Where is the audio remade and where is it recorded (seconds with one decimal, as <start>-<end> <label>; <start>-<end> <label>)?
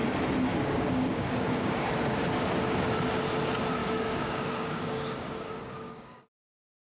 0.0-0.5 recorded; 0.5-1.9 remade; 1.9-3.8 recorded; 3.8-6.2 remade; 6.2-6.8 recorded